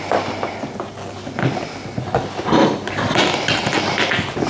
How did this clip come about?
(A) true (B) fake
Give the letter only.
A